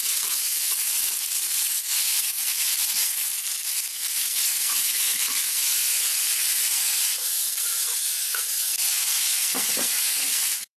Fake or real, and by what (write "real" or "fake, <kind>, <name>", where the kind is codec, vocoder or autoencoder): fake, codec, SNAC